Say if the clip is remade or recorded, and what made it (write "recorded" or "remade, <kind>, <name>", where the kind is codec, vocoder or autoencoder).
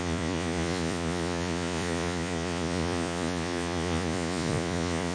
remade, vocoder, Vocos